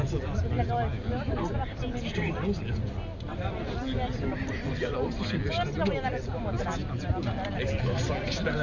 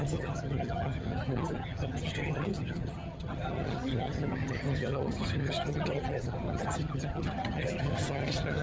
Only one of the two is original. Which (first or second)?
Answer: first